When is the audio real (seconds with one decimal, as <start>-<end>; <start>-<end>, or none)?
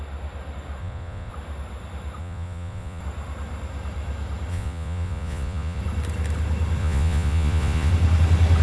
0.0-0.8; 1.3-2.2; 3.0-4.5; 5.8-6.8; 7.9-8.6